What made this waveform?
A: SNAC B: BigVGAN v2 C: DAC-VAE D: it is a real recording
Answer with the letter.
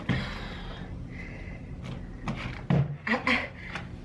D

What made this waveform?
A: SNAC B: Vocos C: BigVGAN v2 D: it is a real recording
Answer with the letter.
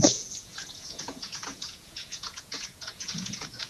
B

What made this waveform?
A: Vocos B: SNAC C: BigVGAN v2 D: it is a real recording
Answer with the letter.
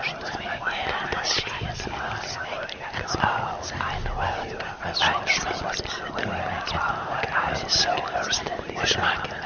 D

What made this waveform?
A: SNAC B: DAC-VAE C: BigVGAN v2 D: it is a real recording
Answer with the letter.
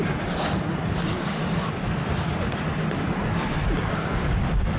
D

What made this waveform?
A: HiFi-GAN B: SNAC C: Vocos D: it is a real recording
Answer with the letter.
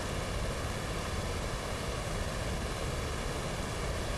D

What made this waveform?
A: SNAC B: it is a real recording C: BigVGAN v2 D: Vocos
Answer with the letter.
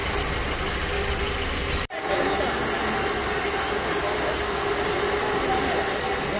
B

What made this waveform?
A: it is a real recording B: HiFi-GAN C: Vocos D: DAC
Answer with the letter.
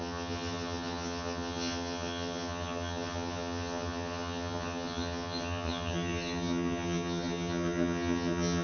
B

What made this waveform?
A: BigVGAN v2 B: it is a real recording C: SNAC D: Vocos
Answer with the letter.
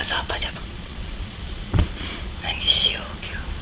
D